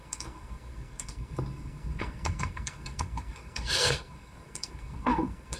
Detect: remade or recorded remade